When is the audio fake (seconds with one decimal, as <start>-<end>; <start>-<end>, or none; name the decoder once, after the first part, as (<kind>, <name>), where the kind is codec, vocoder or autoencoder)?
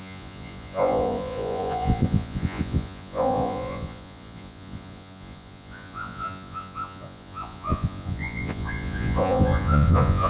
0.0-10.3 (vocoder, Vocos)